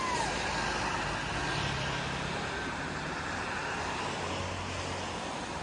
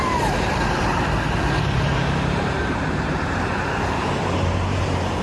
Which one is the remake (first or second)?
second